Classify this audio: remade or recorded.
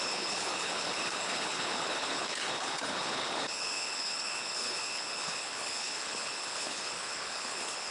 remade